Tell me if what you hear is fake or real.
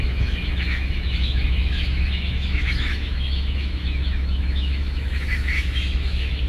fake